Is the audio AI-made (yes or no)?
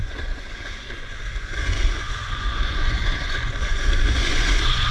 yes